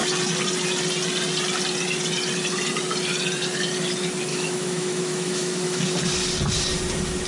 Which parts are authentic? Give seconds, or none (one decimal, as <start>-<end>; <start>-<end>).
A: 0.0-4.3; 5.8-7.3